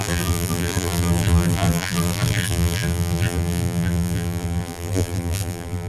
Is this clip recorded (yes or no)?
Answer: no